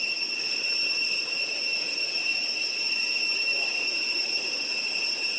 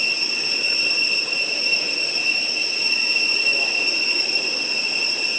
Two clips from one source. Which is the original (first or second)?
second